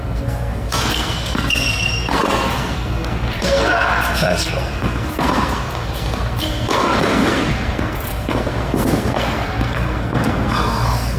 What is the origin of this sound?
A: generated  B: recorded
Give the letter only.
A